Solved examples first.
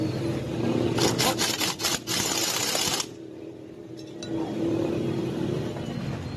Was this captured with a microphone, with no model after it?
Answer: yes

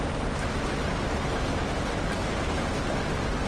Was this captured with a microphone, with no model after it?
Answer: yes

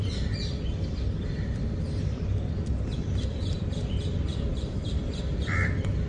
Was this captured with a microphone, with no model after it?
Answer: no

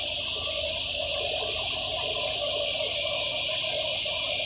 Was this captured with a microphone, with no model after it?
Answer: yes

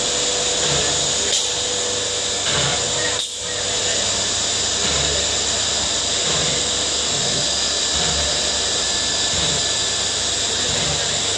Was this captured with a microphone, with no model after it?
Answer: yes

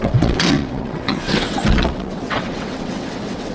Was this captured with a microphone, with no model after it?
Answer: no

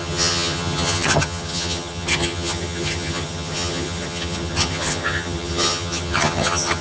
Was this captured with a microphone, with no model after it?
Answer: no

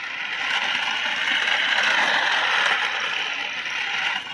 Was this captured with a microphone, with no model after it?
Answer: yes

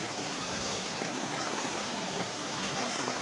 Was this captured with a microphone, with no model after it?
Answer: no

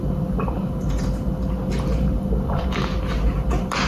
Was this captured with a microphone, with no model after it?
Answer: yes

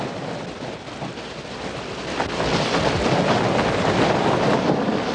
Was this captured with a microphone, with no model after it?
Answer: yes